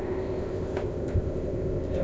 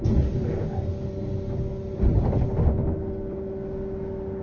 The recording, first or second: second